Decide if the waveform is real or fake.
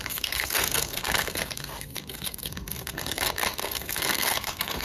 fake